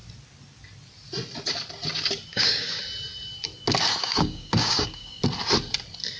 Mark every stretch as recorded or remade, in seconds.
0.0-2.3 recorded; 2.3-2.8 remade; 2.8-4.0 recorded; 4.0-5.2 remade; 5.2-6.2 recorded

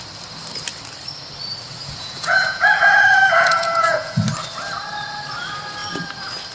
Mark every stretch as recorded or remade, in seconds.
0.0-1.8 recorded; 1.8-4.2 remade; 4.2-6.5 recorded